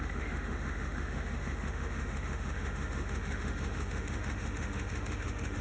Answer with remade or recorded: remade